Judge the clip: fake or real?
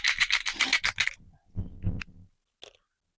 real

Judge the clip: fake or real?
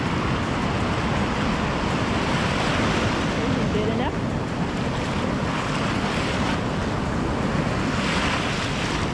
real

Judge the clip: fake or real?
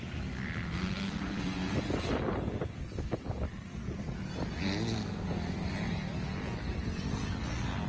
real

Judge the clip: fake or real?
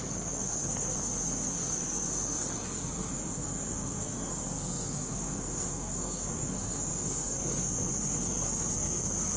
fake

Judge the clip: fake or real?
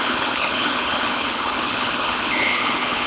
fake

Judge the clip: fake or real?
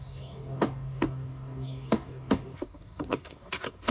fake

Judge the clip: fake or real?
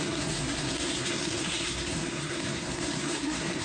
fake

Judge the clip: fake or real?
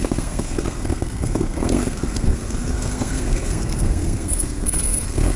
fake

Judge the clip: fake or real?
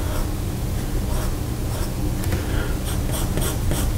real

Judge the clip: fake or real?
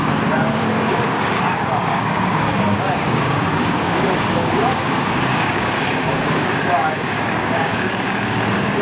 fake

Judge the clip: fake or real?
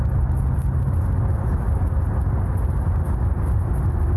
real